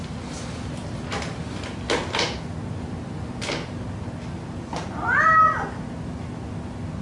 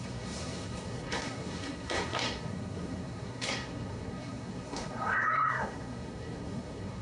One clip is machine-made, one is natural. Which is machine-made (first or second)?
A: second